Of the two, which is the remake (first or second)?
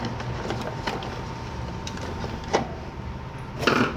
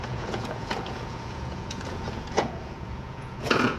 second